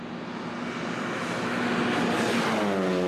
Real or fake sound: real